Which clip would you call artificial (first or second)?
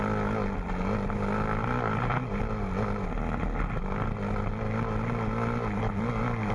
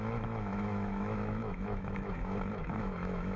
second